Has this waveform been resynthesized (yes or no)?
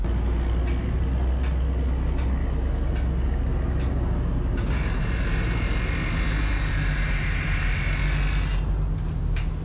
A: no